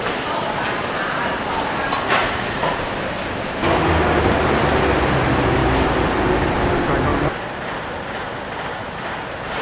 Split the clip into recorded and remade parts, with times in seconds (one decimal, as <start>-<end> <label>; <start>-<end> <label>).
0.0-2.2 recorded; 2.2-2.8 remade; 2.8-9.6 recorded